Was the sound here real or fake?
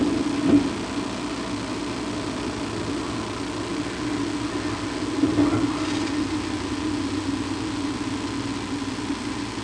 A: real